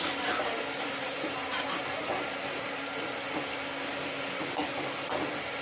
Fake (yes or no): no